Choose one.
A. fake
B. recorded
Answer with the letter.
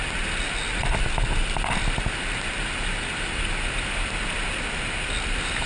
B